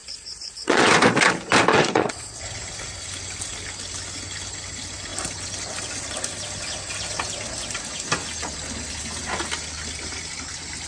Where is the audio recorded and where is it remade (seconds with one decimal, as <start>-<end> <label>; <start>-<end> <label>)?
0.0-0.9 remade; 0.9-1.7 recorded; 1.7-2.4 remade; 2.4-10.9 recorded